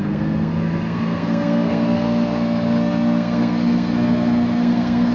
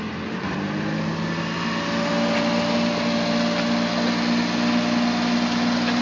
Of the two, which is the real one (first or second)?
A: second